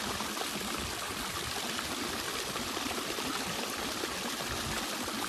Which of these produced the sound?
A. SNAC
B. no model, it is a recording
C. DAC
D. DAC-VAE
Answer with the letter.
B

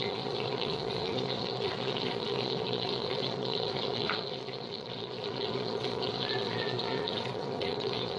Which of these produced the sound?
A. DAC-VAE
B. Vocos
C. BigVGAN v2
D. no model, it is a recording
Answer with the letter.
B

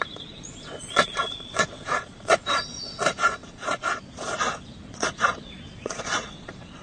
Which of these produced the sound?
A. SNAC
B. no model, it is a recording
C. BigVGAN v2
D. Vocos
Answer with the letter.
D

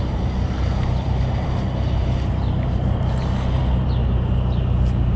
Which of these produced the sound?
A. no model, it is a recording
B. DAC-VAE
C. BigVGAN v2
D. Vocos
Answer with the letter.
A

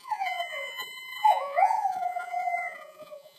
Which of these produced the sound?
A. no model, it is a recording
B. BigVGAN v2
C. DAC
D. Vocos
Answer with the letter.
D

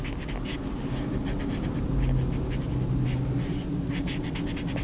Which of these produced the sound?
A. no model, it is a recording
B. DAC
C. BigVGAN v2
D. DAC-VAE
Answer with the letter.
A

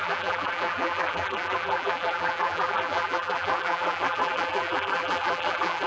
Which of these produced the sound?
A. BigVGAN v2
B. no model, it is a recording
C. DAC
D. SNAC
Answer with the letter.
A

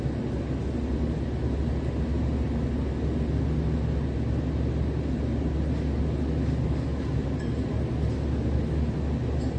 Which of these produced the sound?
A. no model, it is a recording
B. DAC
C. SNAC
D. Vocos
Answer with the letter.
A